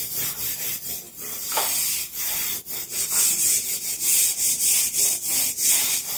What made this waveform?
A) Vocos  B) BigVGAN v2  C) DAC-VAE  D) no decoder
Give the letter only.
B